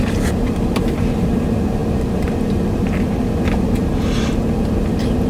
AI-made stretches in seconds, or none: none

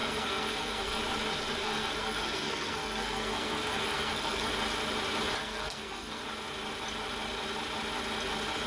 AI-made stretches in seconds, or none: 0.0-1.0 (codec, SNAC); 1.6-4.5; 5.4-6.2

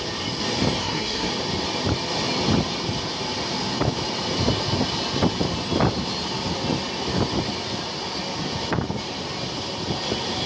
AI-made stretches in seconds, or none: 0.8-1.3 (codec, SNAC)

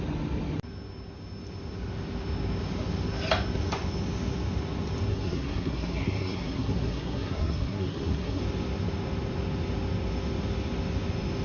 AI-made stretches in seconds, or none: 5.1-8.4 (codec, SNAC)